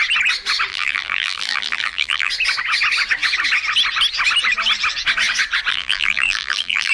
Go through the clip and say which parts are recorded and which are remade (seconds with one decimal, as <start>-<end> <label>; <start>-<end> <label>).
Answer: 0.0-0.7 recorded; 0.7-2.3 remade; 2.3-5.7 recorded; 5.7-6.9 remade